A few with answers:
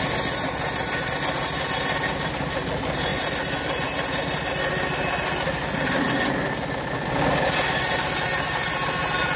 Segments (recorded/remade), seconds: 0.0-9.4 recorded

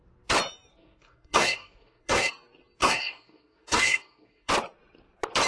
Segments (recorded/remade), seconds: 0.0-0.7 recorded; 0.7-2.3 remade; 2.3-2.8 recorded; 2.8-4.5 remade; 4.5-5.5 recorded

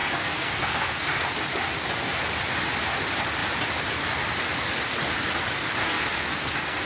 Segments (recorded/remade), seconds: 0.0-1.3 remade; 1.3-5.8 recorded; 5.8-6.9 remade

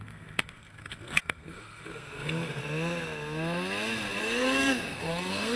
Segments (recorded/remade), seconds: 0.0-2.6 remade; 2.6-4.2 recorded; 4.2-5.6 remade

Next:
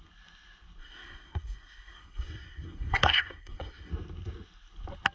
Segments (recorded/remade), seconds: 0.0-0.8 recorded; 0.8-3.9 remade; 3.9-5.1 recorded